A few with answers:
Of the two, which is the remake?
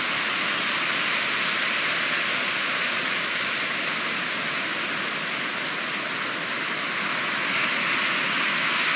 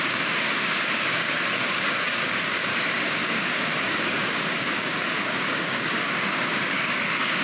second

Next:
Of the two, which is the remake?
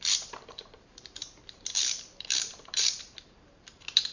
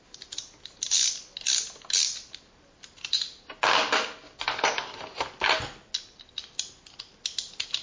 first